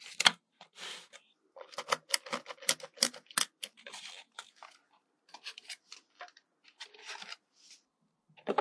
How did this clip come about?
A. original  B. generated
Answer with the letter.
B